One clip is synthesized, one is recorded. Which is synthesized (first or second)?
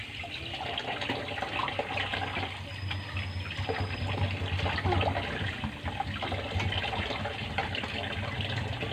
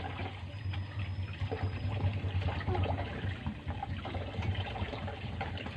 second